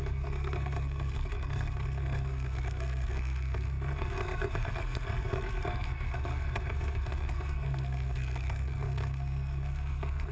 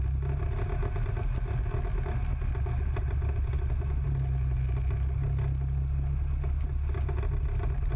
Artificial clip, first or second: first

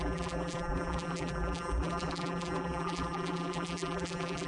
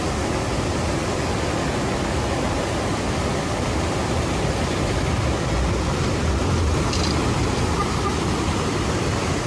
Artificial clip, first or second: first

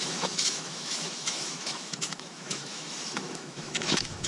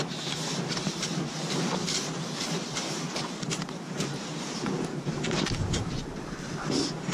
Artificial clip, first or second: first